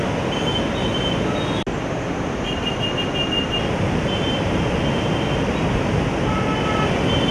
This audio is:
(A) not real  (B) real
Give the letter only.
B